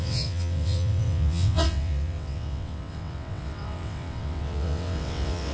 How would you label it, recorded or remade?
remade